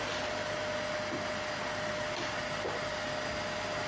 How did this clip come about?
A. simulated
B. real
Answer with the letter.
B